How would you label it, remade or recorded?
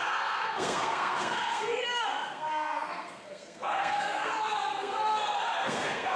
remade